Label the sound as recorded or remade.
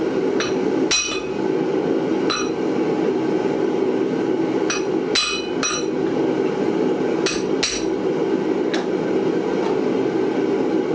recorded